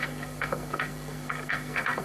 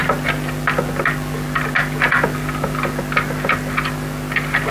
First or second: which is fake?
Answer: first